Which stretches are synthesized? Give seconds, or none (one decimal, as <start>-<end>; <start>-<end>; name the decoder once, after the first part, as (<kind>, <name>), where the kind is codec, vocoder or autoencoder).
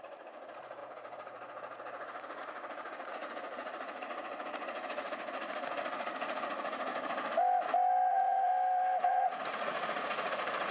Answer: 0.0-6.9 (vocoder, Vocos); 8.1-8.5; 9.0-10.7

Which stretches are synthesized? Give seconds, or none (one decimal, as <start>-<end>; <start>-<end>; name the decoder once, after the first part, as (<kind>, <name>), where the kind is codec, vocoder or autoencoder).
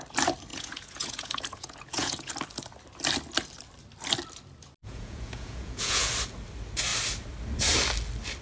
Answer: 0.5-2.3 (vocoder, Vocos); 4.8-6.1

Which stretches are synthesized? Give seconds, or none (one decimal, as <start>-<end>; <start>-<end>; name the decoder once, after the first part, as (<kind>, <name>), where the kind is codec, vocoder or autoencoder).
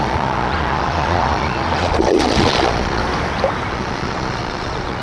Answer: 0.0-3.0 (vocoder, Vocos); 3.7-5.0